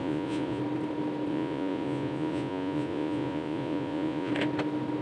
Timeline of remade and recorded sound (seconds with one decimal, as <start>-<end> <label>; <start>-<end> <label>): 0.0-0.6 remade; 0.6-1.3 recorded; 1.3-4.3 remade; 4.3-5.0 recorded